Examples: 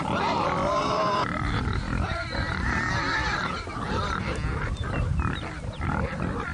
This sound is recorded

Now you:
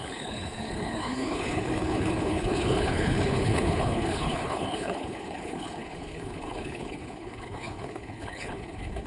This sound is remade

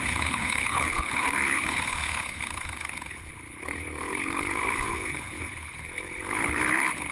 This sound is remade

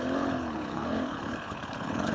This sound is remade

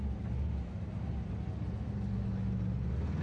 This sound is recorded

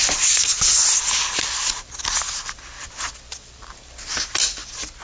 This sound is recorded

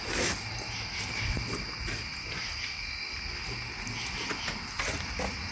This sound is recorded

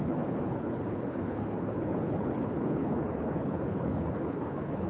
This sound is remade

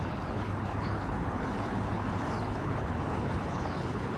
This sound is remade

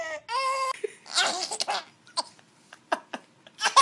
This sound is recorded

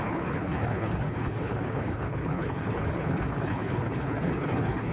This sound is remade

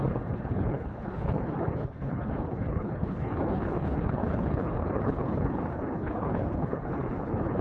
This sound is remade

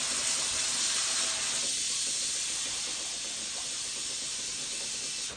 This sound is recorded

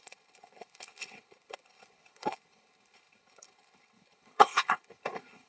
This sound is remade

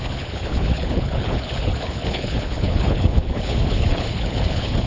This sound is remade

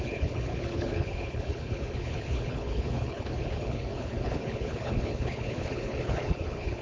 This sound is remade